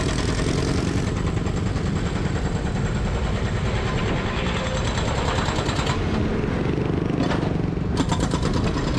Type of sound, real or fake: real